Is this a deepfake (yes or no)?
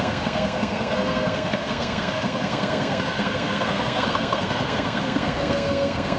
yes